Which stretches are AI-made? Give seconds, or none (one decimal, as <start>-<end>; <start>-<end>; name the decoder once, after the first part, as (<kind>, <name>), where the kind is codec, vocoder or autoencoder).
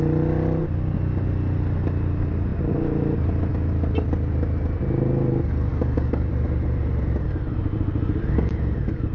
5.7-6.3 (codec, DAC)